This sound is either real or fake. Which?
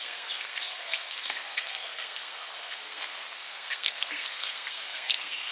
fake